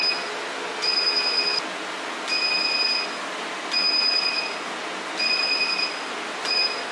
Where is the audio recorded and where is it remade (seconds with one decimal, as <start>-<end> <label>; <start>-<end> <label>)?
0.0-6.9 recorded